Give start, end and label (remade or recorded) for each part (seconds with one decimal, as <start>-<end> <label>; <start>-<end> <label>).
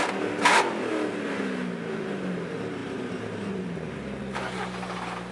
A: 0.0-5.3 recorded